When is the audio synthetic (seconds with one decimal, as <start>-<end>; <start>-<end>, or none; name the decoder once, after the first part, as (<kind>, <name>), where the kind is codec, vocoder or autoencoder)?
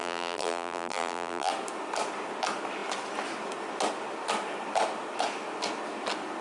0.0-1.5 (vocoder, BigVGAN v2)